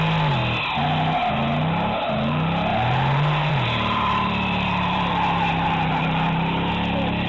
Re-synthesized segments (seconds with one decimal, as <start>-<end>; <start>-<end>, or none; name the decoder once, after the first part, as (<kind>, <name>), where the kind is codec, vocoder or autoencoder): 2.7-6.7 (vocoder, BigVGAN v2)